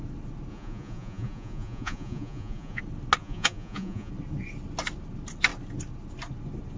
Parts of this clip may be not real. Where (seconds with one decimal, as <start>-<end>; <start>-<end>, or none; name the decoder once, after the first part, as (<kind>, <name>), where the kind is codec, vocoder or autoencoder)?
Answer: 0.5-2.8 (vocoder, Vocos); 3.2-4.1